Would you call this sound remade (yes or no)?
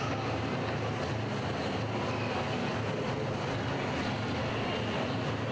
no